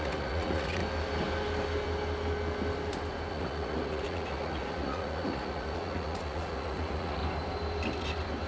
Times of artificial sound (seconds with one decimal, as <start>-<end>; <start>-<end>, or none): 0.0-0.8; 3.3-7.2